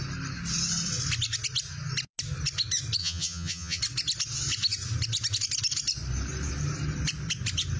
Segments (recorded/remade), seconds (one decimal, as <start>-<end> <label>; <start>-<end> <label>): 0.0-3.0 recorded; 3.0-3.8 remade; 3.8-7.8 recorded